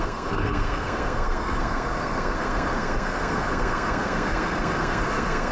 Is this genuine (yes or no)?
no